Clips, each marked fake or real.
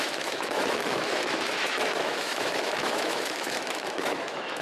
fake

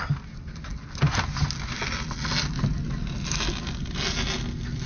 real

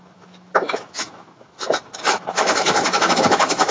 fake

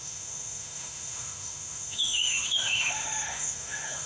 fake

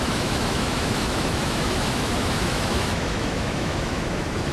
fake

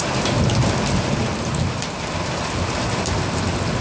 real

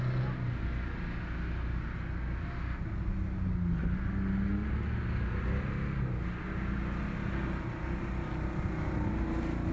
real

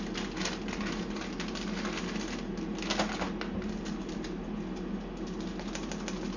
real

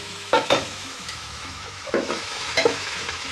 fake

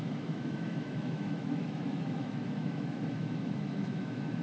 fake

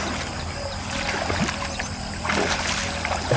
real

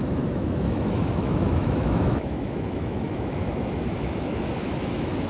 fake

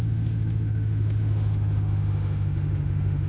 fake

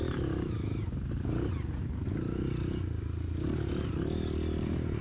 real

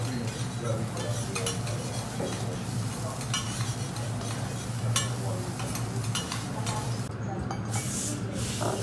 real